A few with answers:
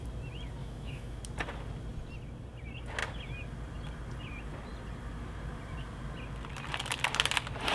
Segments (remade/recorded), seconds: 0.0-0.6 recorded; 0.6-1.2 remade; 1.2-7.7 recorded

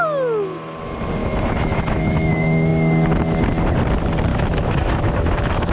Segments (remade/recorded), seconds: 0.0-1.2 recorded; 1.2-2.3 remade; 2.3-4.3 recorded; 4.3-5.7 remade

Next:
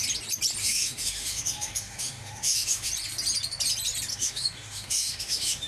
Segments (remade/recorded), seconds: 0.0-0.6 recorded; 0.6-2.9 remade; 2.9-4.1 recorded; 4.1-5.7 remade